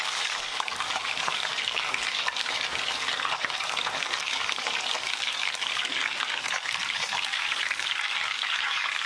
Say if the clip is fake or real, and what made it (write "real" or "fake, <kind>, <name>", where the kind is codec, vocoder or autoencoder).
fake, codec, DAC